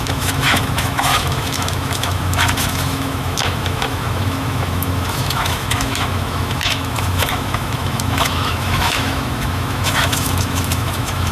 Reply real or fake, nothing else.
fake